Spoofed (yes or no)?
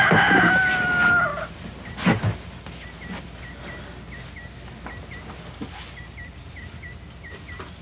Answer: no